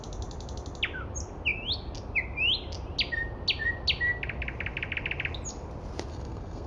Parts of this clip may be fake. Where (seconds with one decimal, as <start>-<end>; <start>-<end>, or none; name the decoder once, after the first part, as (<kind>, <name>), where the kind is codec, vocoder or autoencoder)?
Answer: 6.1-6.7 (codec, SNAC)